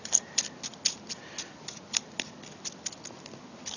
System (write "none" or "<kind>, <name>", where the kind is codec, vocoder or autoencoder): none